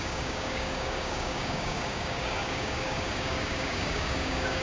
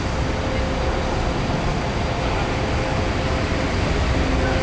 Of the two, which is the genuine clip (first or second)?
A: second